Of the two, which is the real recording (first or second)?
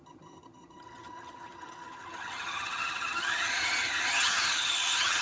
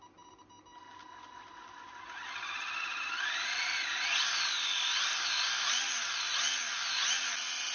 second